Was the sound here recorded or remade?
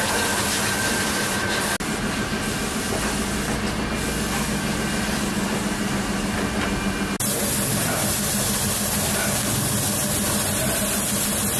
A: recorded